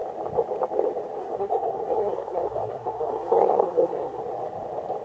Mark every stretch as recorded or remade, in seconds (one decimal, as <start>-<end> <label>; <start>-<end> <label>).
0.0-1.2 recorded; 1.2-4.2 remade; 4.2-5.0 recorded